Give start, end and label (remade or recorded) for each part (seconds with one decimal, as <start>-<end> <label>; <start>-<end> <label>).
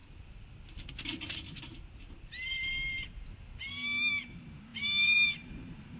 0.0-4.7 recorded; 4.7-6.0 remade